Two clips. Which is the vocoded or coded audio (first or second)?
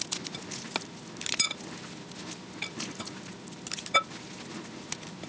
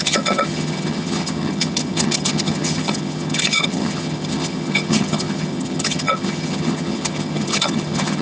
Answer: second